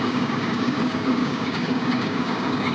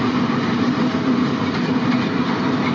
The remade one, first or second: first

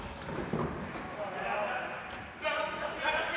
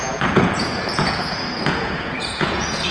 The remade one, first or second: second